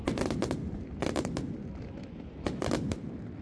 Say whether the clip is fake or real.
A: real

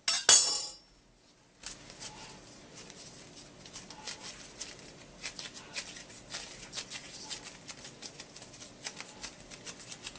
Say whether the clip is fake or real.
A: real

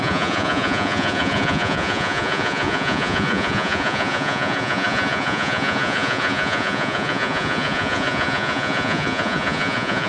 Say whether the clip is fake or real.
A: fake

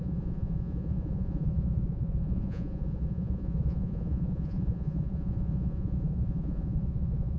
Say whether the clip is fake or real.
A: fake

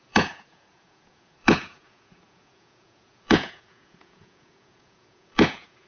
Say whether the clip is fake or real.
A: fake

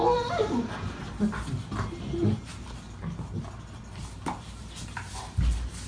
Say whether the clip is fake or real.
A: real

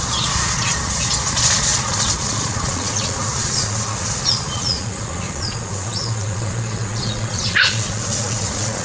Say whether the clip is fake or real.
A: fake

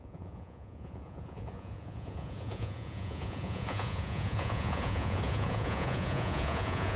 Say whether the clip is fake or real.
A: fake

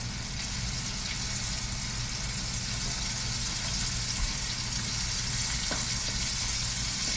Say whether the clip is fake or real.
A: real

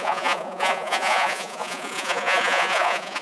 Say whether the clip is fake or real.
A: fake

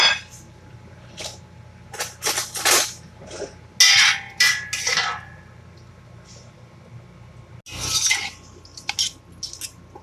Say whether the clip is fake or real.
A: real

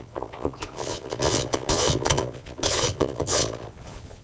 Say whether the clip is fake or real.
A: fake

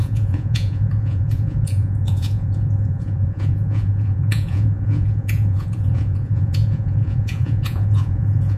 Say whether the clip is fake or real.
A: fake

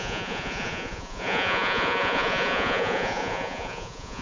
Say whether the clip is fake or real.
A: fake